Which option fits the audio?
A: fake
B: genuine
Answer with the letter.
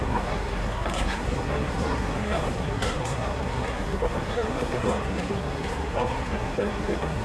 A